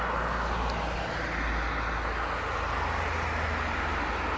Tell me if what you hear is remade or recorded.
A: recorded